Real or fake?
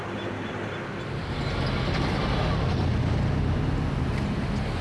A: real